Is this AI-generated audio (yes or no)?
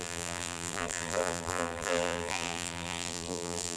yes